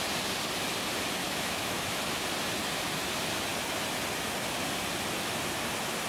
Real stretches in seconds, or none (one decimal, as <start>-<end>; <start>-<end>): 0.0-1.2; 2.0-6.1